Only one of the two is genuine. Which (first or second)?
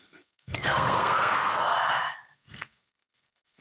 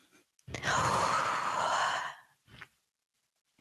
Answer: second